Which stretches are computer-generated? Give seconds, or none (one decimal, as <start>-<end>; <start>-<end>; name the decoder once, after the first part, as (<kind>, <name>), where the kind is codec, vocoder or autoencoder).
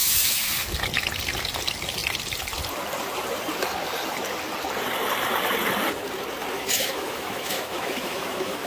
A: 0.0-0.5 (autoencoder, DAC-VAE); 6.5-8.7